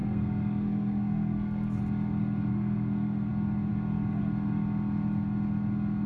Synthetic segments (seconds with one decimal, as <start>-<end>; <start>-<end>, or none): 0.0-1.8; 2.5-3.3